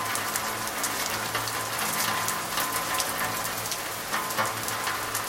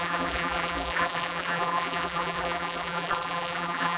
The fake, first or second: second